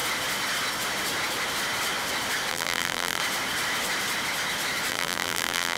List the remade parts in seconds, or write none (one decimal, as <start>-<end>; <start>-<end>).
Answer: 2.5-3.2; 4.9-5.8